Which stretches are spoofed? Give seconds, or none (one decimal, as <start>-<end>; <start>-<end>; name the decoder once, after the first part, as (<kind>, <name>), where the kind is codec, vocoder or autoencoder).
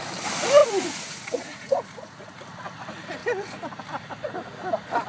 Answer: 0.6-2.4 (vocoder, Vocos)